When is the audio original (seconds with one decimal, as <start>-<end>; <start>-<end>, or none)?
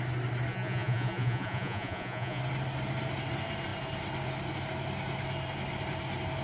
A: 0.0-0.5; 2.4-6.4